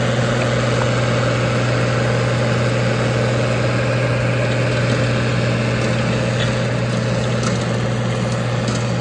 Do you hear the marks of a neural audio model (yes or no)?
no